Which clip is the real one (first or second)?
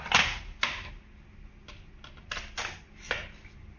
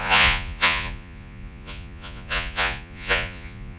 first